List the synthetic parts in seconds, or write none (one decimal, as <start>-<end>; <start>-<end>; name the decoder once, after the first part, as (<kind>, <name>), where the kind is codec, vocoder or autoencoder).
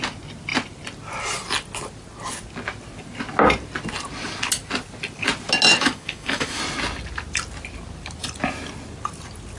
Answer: 5.7-6.6 (autoencoder, DAC-VAE)